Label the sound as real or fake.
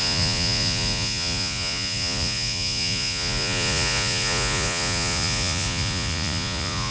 fake